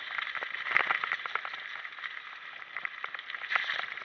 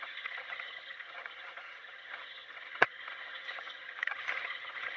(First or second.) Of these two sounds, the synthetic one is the second